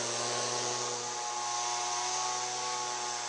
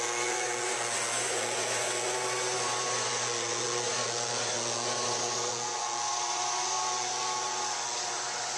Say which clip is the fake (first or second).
second